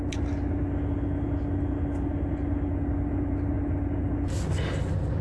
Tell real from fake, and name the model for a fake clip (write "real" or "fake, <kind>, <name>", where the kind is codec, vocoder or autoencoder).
real